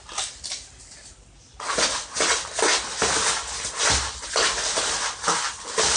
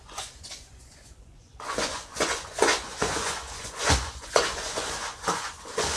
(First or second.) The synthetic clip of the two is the second